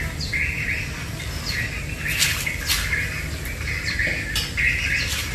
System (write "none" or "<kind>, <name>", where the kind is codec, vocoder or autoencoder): none